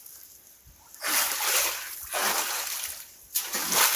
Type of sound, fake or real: real